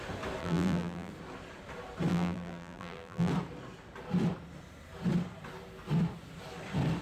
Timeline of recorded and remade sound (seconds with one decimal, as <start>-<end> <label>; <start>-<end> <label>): 0.0-0.4 recorded; 0.4-1.1 remade; 1.1-2.1 recorded; 2.1-3.3 remade; 3.3-7.0 recorded

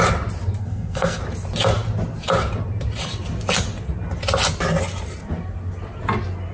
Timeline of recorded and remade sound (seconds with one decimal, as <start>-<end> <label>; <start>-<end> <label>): 0.0-0.6 recorded; 0.6-1.2 remade; 1.2-6.5 recorded

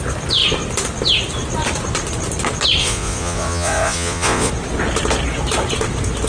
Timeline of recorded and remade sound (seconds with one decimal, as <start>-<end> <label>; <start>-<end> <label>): 0.0-2.8 recorded; 2.8-4.5 remade; 4.5-6.3 recorded

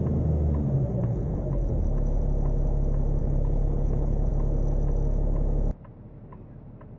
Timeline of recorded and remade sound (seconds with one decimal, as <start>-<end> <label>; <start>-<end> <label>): 0.0-0.9 recorded; 0.9-1.8 remade; 1.8-3.2 recorded; 3.2-4.3 remade; 4.3-7.0 recorded

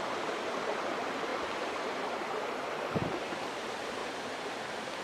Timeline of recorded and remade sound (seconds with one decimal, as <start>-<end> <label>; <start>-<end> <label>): 0.0-1.3 remade; 1.3-2.3 recorded; 2.3-3.0 remade; 3.0-3.6 recorded; 3.6-5.0 remade

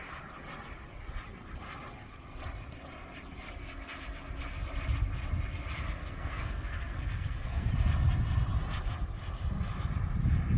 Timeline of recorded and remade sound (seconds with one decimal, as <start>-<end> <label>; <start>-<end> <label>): 0.0-6.0 recorded; 6.0-7.7 remade; 7.7-10.6 recorded